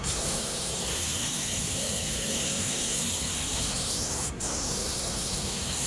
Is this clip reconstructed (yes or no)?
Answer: yes